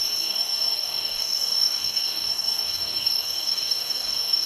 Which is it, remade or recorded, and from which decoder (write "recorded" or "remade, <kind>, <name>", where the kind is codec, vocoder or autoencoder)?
remade, codec, DAC